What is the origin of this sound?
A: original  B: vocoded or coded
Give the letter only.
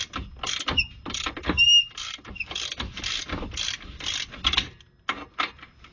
A